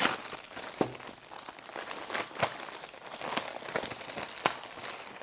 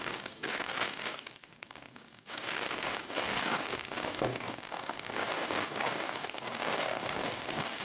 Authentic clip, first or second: first